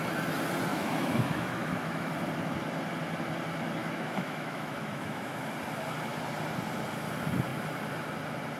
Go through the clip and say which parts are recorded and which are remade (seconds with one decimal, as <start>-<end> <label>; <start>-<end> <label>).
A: 0.0-0.7 recorded; 0.7-2.1 remade; 2.1-3.8 recorded; 3.8-5.5 remade; 5.5-8.6 recorded